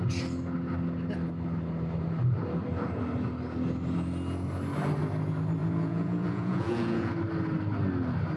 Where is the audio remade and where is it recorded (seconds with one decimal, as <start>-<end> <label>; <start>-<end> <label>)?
0.0-5.6 recorded; 5.6-7.1 remade; 7.1-8.4 recorded